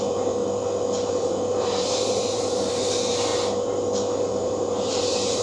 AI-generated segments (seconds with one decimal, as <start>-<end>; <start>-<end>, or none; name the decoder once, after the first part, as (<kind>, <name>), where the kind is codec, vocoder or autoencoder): 0.0-0.4 (vocoder, BigVGAN v2); 1.1-3.3; 4.3-5.4